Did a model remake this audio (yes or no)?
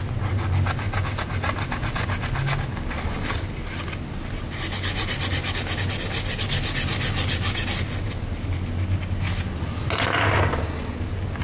no